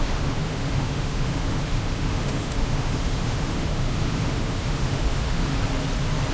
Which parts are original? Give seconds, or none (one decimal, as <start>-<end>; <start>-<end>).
5.5-6.3